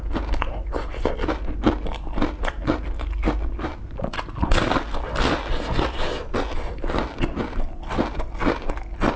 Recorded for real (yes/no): yes